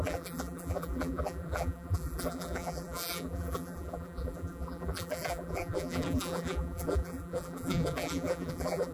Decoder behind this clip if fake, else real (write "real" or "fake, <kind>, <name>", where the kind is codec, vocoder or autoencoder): fake, vocoder, BigVGAN v2